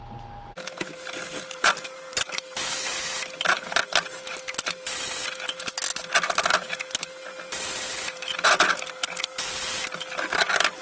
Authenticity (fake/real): real